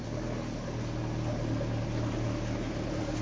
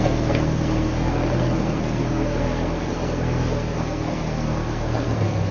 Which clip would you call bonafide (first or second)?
first